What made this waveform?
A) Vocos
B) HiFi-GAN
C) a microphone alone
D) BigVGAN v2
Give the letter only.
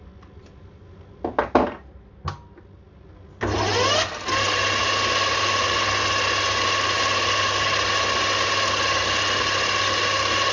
C